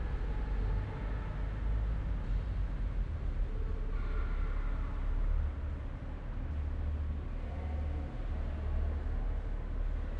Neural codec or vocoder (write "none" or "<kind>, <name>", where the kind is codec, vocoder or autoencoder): none